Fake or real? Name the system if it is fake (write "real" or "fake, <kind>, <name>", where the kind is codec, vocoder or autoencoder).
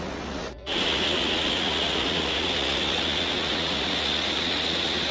fake, vocoder, Vocos